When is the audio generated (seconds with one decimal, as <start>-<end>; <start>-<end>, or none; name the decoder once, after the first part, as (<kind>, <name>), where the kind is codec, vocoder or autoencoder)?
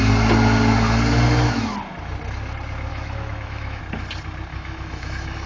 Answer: 2.9-3.8 (autoencoder, DAC-VAE); 4.5-5.5